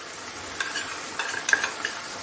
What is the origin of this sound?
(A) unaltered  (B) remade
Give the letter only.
A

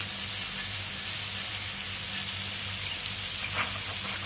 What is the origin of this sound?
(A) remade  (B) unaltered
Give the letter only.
B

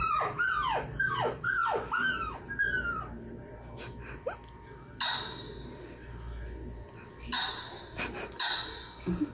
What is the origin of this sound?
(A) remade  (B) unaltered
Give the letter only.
B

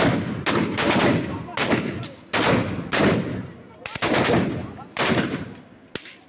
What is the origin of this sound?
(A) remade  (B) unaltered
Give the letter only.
B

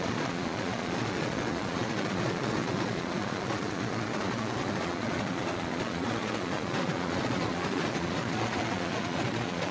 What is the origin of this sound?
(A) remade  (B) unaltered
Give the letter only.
A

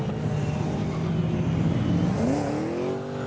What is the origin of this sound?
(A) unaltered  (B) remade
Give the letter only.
A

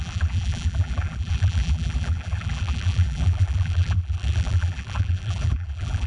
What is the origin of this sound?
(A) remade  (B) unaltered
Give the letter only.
A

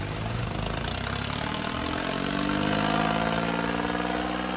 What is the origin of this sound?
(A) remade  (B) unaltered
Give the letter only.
B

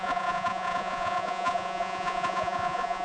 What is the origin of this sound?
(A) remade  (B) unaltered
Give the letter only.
A